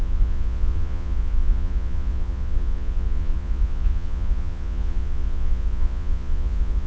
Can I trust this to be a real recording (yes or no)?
no